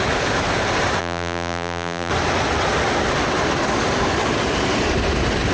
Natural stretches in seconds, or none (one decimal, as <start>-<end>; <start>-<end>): 0.0-1.0; 2.1-5.5